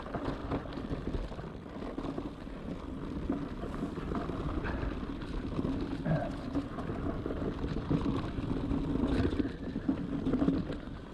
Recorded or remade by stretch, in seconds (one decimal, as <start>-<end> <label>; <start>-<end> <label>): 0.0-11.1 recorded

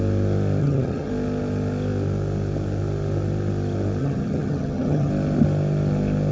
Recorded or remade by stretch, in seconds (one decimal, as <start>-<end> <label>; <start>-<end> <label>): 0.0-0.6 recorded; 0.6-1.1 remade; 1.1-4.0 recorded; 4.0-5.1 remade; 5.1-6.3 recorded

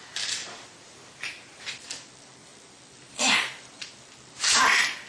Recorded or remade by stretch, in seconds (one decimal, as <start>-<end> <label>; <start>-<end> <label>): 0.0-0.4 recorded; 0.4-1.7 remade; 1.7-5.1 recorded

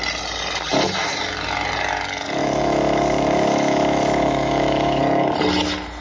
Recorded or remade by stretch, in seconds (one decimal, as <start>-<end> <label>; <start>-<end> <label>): 0.0-2.4 recorded; 2.4-5.0 remade; 5.0-6.0 recorded